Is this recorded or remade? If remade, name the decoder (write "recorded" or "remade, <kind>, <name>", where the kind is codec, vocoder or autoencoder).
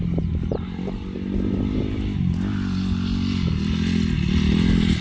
recorded